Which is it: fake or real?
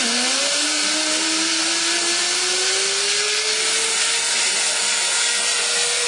real